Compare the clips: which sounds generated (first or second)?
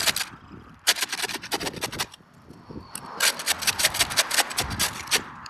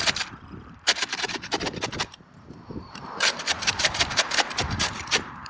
second